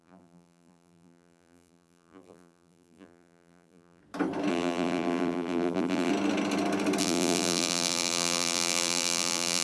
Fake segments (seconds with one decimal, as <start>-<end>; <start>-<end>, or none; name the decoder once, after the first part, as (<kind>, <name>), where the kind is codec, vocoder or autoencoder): 0.0-4.0 (vocoder, BigVGAN v2); 4.5-6.1; 7.0-9.6